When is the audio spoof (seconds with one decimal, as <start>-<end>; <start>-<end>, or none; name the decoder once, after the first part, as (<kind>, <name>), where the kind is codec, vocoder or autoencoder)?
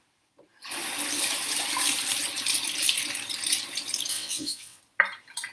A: 4.1-4.8 (vocoder, WaveNeXt)